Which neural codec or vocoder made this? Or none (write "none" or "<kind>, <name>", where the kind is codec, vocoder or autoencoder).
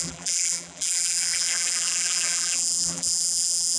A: vocoder, BigVGAN v2